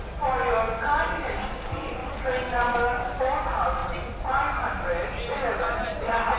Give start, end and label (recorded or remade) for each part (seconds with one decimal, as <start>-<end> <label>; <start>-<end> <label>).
0.0-6.4 recorded

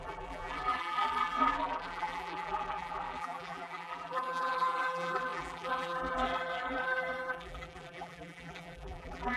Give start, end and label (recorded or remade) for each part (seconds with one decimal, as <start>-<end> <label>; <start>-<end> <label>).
0.0-9.4 remade

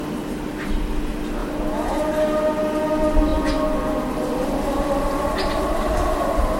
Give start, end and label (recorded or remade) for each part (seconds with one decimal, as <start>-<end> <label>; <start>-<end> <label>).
0.0-6.6 recorded

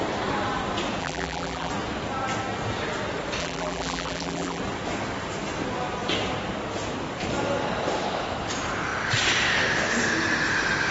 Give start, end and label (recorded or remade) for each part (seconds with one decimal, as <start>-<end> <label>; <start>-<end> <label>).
0.0-1.0 recorded; 1.0-1.7 remade; 1.7-3.4 recorded; 3.4-4.6 remade; 4.6-10.9 recorded

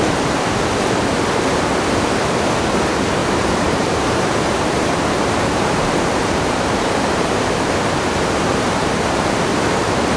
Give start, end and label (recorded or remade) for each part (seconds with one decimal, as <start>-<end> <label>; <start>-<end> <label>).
0.0-3.2 recorded; 3.2-7.7 remade; 7.7-8.5 recorded; 8.5-9.4 remade; 9.4-10.2 recorded

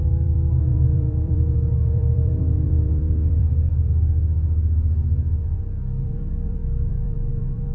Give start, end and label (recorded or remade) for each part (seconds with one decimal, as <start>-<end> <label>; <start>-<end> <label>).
0.0-3.9 remade; 3.9-6.0 recorded; 6.0-7.7 remade

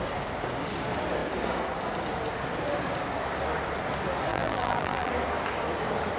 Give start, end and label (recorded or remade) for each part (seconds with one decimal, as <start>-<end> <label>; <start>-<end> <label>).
0.0-4.3 recorded; 4.3-5.1 remade; 5.1-6.2 recorded

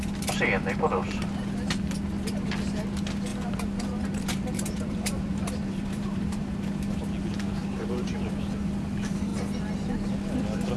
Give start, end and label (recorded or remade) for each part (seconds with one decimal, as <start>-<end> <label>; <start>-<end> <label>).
0.0-3.3 recorded; 3.3-6.4 remade; 6.4-7.6 recorded; 7.6-8.3 remade; 8.3-10.8 recorded